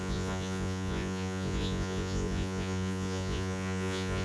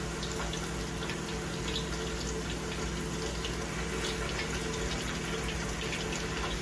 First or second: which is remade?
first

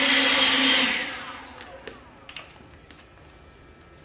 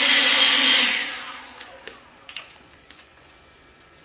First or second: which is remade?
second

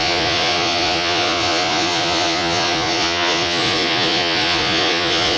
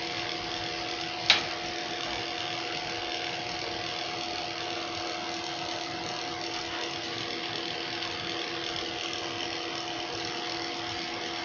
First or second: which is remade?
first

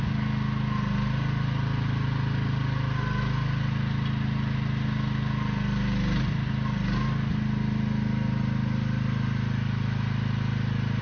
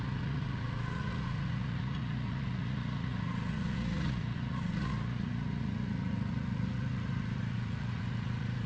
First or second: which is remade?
second